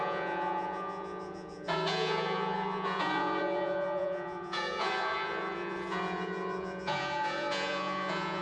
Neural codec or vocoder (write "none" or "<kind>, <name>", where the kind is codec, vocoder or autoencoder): vocoder, Vocos